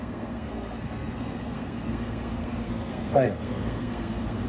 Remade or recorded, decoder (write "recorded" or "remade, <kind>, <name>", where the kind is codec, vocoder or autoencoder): remade, codec, SNAC